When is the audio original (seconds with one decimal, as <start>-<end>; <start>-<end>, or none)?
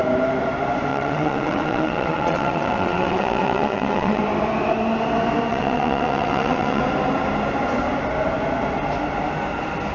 0.0-0.9; 4.2-5.5; 6.8-9.9